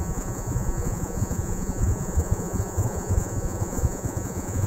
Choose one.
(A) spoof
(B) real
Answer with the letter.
A